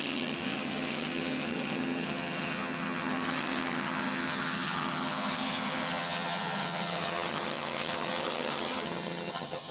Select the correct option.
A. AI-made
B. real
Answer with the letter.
A